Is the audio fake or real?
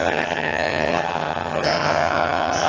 fake